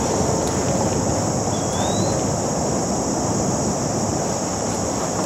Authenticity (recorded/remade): recorded